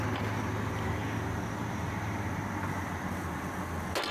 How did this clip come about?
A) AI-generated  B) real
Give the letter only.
B